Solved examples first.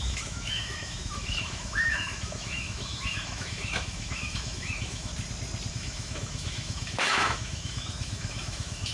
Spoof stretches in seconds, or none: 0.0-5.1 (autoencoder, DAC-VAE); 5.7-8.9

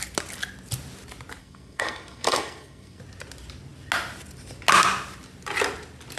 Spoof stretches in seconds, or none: 1.4-3.0 (codec, SNAC)

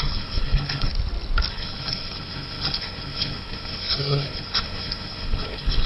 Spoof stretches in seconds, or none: 0.0-0.9 (codec, SNAC); 1.5-5.9

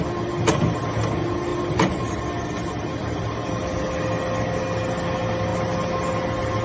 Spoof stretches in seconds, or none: 1.5-2.2 (vocoder, BigVGAN v2); 3.0-3.6

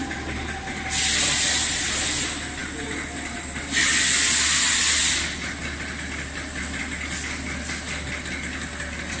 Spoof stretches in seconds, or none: none